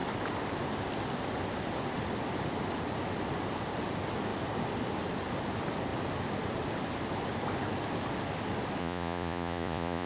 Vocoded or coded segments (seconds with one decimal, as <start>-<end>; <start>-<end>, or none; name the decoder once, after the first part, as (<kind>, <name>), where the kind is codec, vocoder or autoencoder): 8.8-10.1 (vocoder, Vocos)